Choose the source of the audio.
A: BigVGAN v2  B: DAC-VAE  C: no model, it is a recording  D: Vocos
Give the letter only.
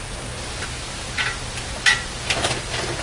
C